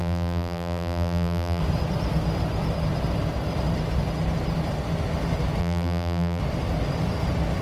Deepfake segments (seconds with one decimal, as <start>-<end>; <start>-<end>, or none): 0.0-1.6; 5.6-6.4